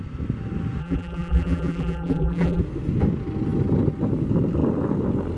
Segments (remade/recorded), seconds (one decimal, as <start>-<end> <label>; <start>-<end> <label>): 0.0-0.8 recorded; 0.8-2.6 remade; 2.6-5.4 recorded